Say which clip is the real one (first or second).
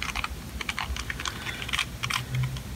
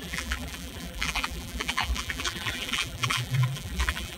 first